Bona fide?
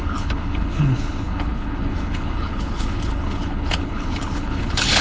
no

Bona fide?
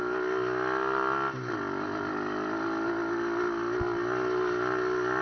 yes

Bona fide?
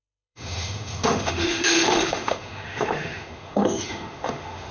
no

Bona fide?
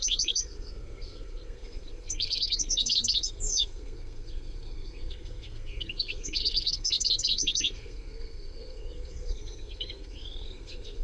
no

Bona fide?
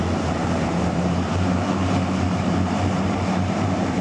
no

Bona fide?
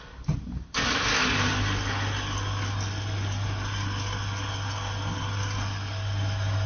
yes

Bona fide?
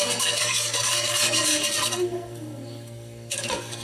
no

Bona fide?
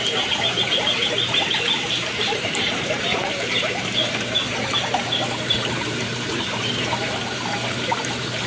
no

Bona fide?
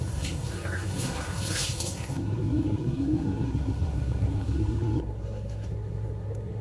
no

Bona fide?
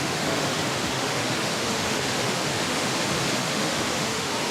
no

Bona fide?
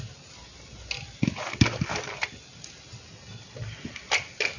yes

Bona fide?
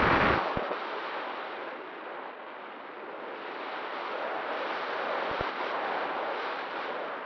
yes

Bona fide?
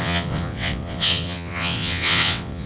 no